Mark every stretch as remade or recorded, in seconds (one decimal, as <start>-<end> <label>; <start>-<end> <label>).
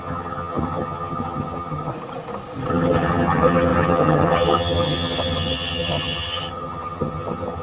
0.0-1.9 remade; 1.9-2.7 recorded; 2.7-7.6 remade